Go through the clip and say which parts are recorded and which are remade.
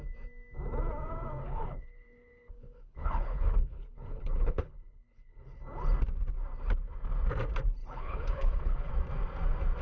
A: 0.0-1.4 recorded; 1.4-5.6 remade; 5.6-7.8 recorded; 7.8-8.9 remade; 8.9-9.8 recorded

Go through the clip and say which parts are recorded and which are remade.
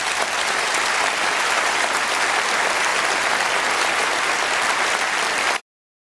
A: 0.0-6.1 recorded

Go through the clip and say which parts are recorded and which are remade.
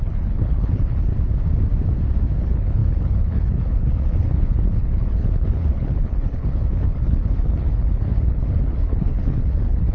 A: 0.0-1.1 remade; 1.1-2.4 recorded; 2.4-9.9 remade